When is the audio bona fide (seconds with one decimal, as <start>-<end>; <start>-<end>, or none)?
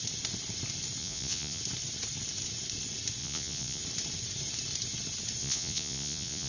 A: 0.0-1.0; 1.6-3.2; 3.8-5.4